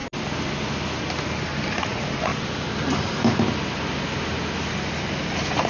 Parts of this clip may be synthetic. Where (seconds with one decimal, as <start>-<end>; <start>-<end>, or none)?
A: 1.7-2.3